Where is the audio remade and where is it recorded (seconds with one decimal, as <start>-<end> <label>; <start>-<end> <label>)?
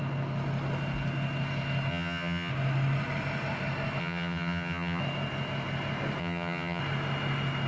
0.0-1.9 recorded; 1.9-2.5 remade; 2.5-4.0 recorded; 4.0-5.0 remade; 5.0-6.2 recorded; 6.2-6.8 remade; 6.8-7.7 recorded